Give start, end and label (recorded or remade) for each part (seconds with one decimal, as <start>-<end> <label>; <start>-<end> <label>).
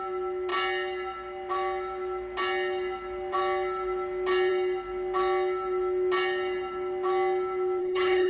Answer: 0.0-7.8 recorded; 7.8-8.3 remade